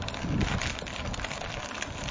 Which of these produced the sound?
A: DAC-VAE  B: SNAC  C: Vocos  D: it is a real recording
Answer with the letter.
D